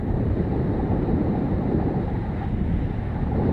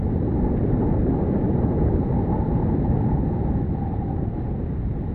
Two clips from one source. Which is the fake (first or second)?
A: first